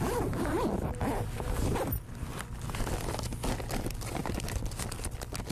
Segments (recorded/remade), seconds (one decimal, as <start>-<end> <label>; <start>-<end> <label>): 0.0-5.5 recorded